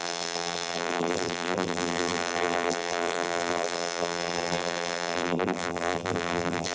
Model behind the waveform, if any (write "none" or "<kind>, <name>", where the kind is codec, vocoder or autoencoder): vocoder, BigVGAN v2